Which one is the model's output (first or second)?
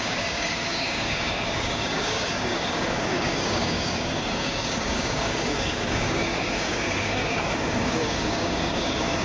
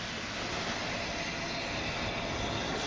first